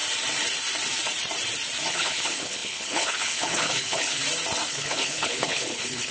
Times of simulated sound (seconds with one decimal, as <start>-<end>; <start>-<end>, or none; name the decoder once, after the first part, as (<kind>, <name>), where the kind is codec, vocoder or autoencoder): 1.9-4.2 (codec, HILCodec); 4.7-6.1